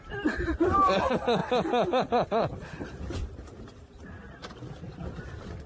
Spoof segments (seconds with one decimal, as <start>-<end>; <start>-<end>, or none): 0.0-5.7